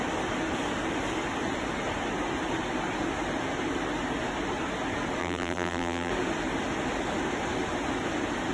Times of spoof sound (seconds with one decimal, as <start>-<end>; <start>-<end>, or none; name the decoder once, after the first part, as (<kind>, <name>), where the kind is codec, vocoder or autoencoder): 5.2-6.1 (vocoder, BigVGAN v2)